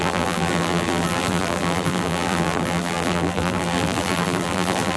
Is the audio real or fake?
fake